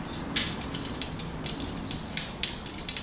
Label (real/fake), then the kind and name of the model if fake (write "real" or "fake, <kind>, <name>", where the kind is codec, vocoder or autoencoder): real